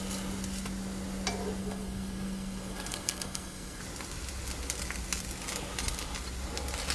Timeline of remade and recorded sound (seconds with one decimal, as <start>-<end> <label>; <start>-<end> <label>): 0.0-1.6 recorded; 1.6-3.8 remade; 3.8-6.9 recorded